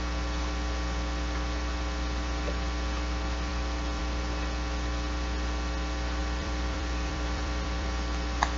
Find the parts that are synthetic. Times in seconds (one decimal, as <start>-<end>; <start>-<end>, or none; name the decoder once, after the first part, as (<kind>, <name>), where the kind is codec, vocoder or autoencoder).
6.2-7.9 (vocoder, BigVGAN v2)